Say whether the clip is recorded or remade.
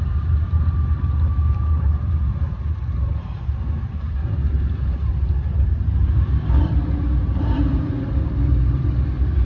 remade